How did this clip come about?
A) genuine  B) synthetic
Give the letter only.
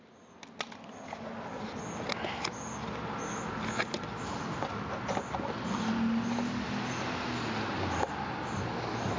A